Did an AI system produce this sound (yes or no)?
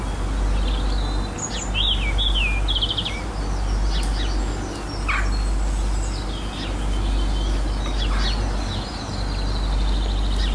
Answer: no